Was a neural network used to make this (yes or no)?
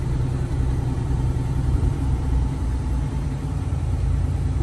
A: yes